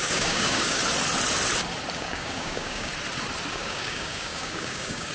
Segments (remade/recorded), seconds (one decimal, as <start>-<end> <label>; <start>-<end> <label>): 0.0-0.8 remade; 0.8-2.0 recorded; 2.0-2.9 remade; 2.9-3.5 recorded; 3.5-5.1 remade